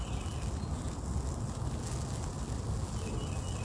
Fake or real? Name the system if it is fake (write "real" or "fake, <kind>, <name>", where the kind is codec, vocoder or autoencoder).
real